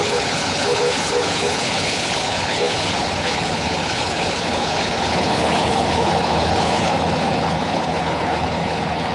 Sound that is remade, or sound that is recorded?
remade